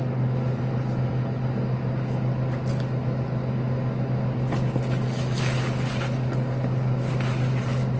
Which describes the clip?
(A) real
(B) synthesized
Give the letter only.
A